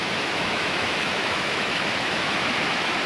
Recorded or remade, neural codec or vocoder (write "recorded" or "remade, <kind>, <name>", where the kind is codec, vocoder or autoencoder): remade, autoencoder, DAC-VAE